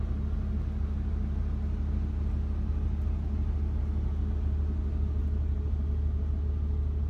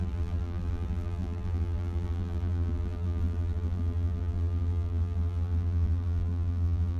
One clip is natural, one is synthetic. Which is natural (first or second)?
first